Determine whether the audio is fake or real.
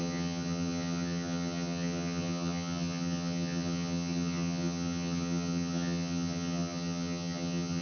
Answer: fake